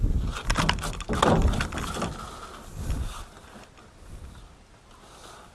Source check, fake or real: real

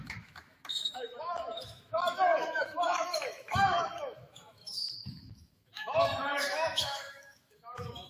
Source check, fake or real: fake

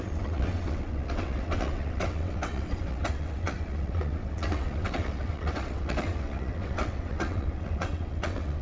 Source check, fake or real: fake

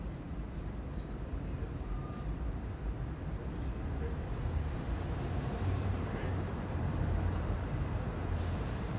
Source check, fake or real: fake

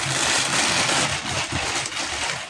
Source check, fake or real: real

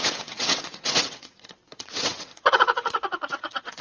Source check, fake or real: fake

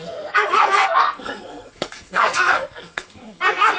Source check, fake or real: fake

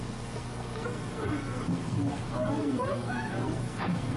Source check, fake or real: fake